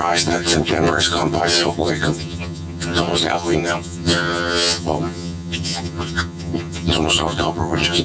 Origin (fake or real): fake